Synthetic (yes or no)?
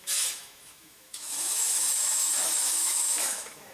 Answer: yes